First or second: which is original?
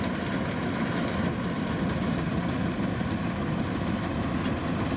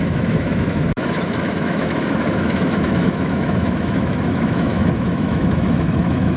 first